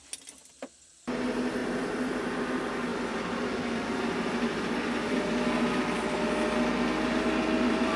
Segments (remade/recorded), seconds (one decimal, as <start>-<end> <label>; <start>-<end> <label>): 0.0-1.6 recorded; 1.6-2.3 remade; 2.3-2.9 recorded; 2.9-3.4 remade; 3.4-8.0 recorded